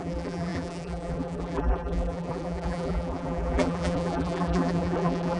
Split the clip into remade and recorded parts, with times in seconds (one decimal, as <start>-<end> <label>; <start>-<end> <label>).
0.0-5.4 remade